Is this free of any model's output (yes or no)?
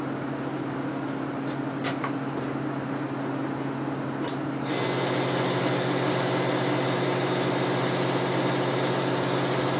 yes